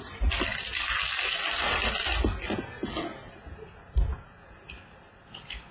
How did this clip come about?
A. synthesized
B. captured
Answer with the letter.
B